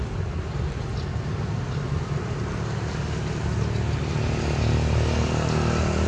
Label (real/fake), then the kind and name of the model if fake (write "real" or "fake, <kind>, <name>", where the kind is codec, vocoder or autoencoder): real